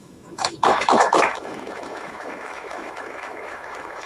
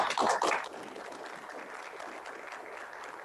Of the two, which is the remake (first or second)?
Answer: first